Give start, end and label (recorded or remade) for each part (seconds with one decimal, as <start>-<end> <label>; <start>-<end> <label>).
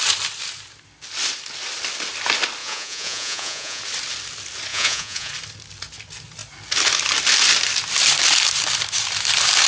0.0-2.6 recorded; 2.6-3.8 remade; 3.8-4.7 recorded; 4.7-5.3 remade; 5.3-9.7 recorded